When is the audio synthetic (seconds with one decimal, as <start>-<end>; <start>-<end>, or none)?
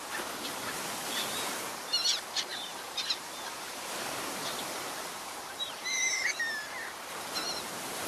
2.5-6.3